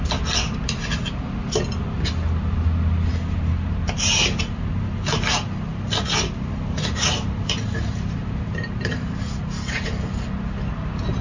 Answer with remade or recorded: recorded